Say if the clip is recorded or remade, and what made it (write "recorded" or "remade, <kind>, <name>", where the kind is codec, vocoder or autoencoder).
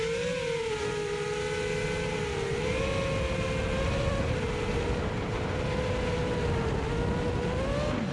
recorded